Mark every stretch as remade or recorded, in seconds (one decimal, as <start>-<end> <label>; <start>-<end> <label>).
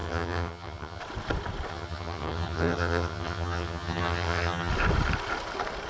0.0-1.0 remade; 1.0-1.7 recorded; 1.7-4.7 remade; 4.7-5.9 recorded